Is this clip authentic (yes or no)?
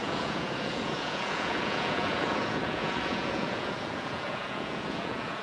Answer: no